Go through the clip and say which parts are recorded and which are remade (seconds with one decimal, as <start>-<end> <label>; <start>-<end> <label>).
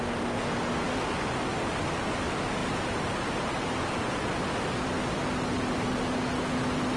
0.0-7.0 recorded